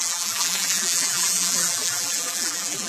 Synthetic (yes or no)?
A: yes